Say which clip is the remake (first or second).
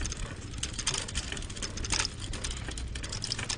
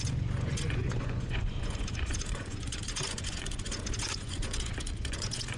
second